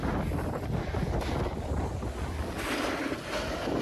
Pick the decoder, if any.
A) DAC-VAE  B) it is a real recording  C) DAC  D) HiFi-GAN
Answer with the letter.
B